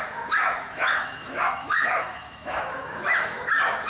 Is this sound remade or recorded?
remade